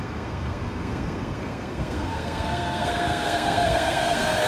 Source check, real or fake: fake